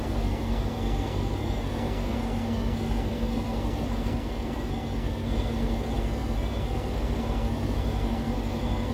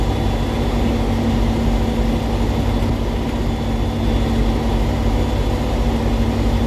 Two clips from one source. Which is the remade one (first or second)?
first